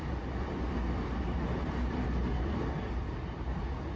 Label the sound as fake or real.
real